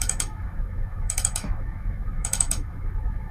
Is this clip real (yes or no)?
no